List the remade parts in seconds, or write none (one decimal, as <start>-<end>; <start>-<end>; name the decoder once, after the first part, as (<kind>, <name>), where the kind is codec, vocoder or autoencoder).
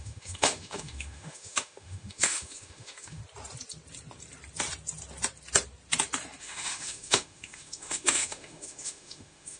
0.0-3.2 (autoencoder, DAC-VAE); 6.4-9.6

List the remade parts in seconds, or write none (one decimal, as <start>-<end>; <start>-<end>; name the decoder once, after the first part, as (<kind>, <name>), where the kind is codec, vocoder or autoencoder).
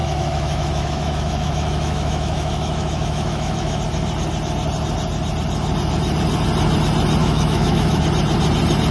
0.0-3.8 (autoencoder, DAC-VAE); 7.2-8.0